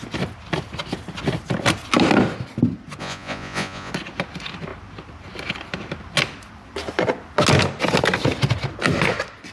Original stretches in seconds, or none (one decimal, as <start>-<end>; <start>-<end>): 0.0-3.0; 3.9-9.5